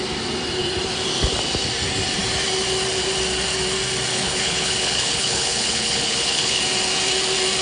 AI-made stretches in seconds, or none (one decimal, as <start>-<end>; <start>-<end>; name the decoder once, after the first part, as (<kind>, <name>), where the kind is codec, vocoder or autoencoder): 4.1-6.6 (codec, HILCodec)